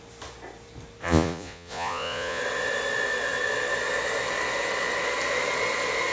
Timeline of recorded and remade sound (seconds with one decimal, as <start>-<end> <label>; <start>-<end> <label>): 0.0-1.0 recorded; 1.0-2.4 remade; 2.4-6.1 recorded